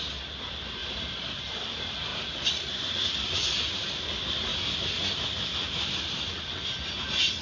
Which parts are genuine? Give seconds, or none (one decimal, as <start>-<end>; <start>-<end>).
0.0-0.8; 1.4-7.4